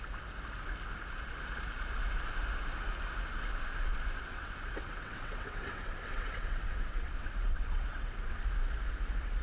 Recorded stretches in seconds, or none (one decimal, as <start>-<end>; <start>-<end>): 0.0-4.3; 8.4-9.4